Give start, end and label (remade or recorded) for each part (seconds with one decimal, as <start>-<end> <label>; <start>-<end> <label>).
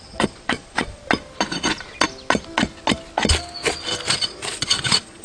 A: 0.0-1.0 remade; 1.0-4.1 recorded; 4.1-5.2 remade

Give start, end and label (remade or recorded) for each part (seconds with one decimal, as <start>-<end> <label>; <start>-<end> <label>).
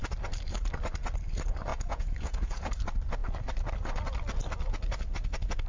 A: 0.0-1.7 recorded; 1.7-2.7 remade; 2.7-5.7 recorded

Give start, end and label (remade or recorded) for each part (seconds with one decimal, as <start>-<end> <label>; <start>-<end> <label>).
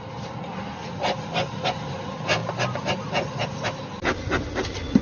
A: 0.0-5.0 recorded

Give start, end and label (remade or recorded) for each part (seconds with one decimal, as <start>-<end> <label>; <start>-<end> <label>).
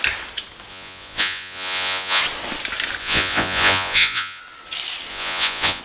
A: 0.0-0.7 recorded; 0.7-2.2 remade; 2.2-3.0 recorded; 3.0-4.4 remade; 4.4-5.1 recorded; 5.1-5.8 remade